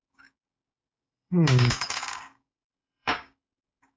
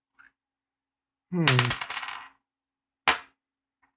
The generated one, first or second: first